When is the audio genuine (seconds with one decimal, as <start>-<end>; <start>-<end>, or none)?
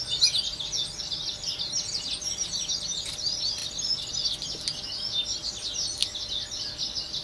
0.0-7.2